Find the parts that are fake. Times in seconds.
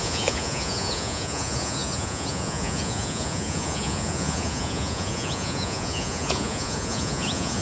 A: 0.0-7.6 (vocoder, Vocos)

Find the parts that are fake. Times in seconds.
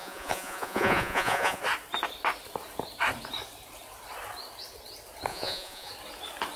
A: 0.0-1.6 (vocoder, Vocos); 5.3-5.9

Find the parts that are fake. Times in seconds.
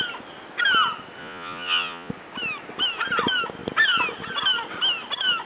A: 1.2-2.1 (vocoder, Vocos)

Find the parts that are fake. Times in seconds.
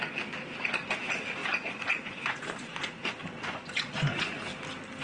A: 1.4-4.4 (vocoder, Vocos)